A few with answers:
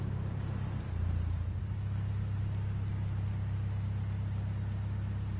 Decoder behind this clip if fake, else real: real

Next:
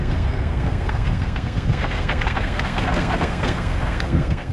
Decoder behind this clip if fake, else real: fake, codec, SNAC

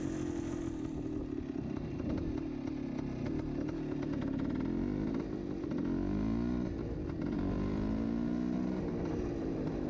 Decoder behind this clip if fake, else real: real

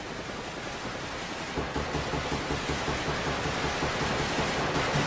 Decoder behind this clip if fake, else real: real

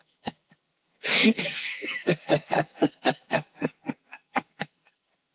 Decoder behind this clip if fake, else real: fake, codec, SNAC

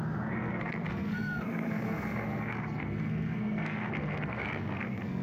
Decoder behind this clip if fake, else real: fake, codec, SNAC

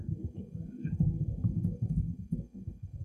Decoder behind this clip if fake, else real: fake, codec, SNAC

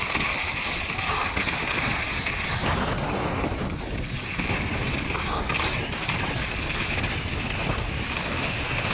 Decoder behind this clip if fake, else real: real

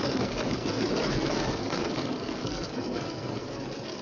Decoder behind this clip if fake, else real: fake, codec, SNAC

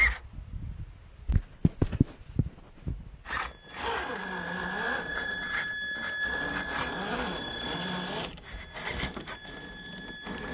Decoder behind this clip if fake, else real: real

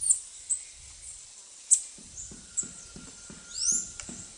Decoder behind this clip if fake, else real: real